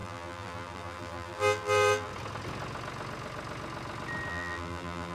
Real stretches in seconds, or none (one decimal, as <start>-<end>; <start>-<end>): 2.1-4.3